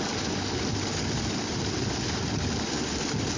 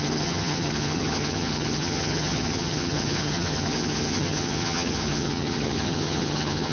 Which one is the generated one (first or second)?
second